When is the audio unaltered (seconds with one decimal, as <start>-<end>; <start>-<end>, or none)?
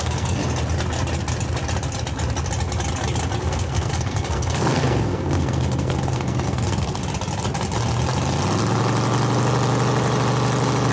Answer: 0.4-3.4; 7.0-10.9